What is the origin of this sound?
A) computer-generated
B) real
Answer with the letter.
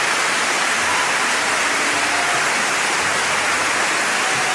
B